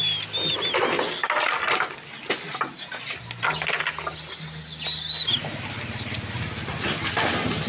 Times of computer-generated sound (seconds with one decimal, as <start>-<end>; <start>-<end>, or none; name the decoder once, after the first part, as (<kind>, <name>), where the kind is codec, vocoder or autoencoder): none